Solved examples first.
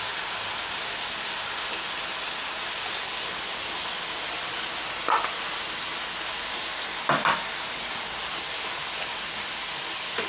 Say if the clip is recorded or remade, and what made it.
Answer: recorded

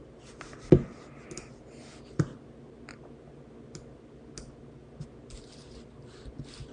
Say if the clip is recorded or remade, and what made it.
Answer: recorded